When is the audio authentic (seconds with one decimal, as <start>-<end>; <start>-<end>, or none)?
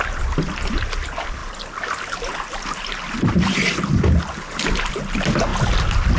0.0-6.2